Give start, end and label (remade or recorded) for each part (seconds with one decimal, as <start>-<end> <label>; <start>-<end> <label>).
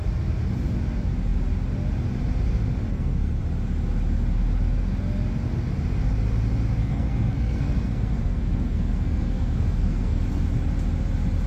0.0-2.9 recorded; 2.9-3.4 remade; 3.4-6.8 recorded; 6.8-10.2 remade; 10.2-11.5 recorded